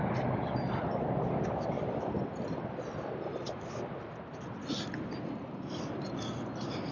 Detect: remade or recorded recorded